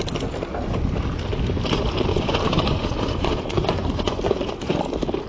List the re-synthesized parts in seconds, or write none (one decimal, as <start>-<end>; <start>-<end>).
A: 2.1-4.8